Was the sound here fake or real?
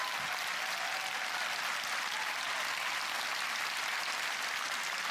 real